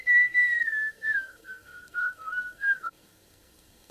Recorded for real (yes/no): no